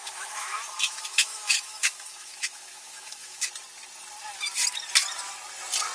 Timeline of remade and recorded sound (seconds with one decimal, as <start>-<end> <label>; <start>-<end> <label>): 0.0-3.5 remade; 3.5-5.9 recorded